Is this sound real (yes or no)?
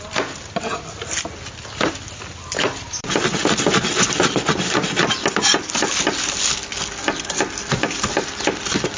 yes